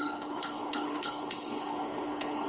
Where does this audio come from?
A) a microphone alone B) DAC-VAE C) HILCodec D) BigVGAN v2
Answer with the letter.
C